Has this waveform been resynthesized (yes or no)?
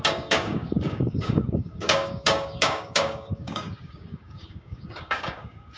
yes